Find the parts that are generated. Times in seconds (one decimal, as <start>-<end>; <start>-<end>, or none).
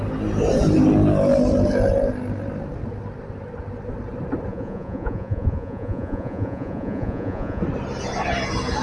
4.5-7.6